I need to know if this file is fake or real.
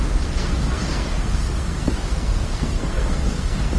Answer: fake